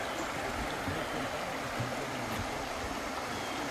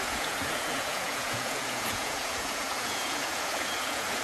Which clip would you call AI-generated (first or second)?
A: second